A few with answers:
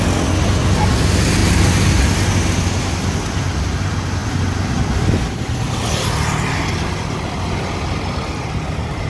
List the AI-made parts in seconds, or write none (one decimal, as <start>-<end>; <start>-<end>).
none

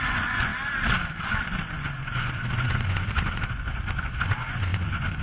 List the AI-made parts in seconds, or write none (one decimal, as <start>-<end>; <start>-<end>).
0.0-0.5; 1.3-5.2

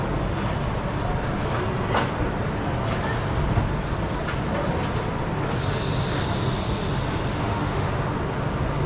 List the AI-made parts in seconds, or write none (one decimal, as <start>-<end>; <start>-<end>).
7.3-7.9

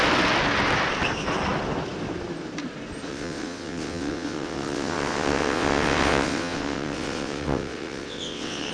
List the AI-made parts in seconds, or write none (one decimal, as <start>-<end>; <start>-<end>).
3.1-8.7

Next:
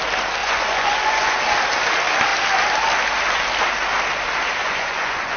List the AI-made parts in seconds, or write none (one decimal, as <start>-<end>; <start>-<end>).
0.4-1.4; 4.6-5.4

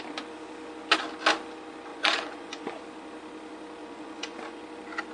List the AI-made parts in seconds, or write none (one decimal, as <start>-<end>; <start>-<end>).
1.9-2.8; 3.8-4.6

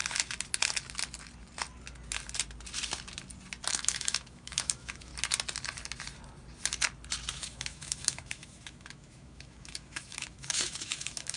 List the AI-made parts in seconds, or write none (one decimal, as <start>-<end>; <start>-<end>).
3.7-5.1; 7.3-11.4